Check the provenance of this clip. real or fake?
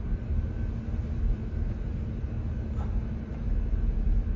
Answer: real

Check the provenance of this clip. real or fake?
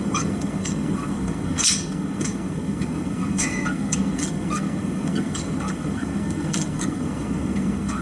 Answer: fake